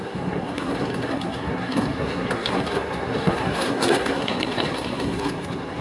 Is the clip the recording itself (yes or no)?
no